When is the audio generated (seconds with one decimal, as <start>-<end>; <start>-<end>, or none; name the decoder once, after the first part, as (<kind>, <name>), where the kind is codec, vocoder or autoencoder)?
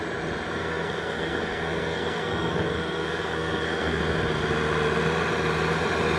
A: 0.6-4.0 (codec, SNAC)